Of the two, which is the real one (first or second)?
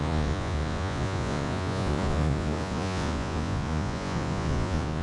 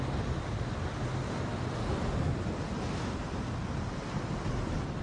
second